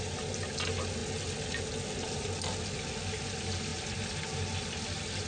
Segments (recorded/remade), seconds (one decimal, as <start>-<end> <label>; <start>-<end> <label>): 0.0-5.3 recorded